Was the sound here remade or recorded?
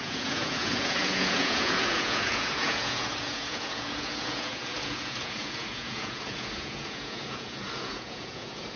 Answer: remade